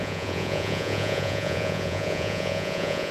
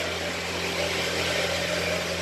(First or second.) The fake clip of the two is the first